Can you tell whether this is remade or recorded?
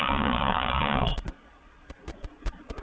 remade